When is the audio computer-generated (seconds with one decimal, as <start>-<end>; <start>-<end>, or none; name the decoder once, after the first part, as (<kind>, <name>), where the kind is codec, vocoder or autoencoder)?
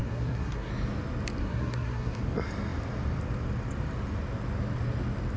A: 0.0-0.7 (codec, SNAC); 1.4-2.2